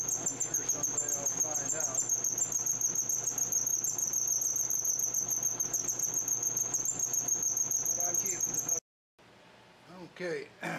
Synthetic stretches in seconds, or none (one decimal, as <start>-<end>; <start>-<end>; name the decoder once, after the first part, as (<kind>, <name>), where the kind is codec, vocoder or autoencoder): none